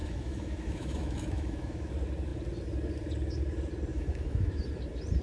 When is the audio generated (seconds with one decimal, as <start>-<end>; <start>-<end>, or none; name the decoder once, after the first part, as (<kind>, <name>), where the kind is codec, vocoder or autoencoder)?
0.0-1.9 (autoencoder, DAC-VAE); 3.9-4.6